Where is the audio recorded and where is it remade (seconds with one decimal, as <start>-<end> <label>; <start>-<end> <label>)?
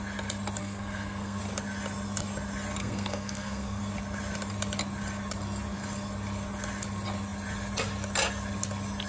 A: 0.0-0.6 recorded; 0.6-1.4 remade; 1.4-2.8 recorded; 2.8-3.8 remade; 3.8-9.1 recorded